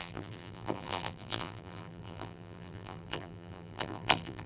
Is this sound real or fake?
fake